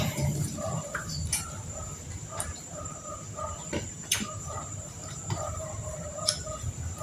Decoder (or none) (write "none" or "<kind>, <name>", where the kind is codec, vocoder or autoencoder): vocoder, BigVGAN v2